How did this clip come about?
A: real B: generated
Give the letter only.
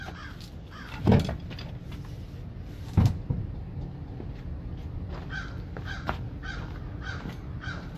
A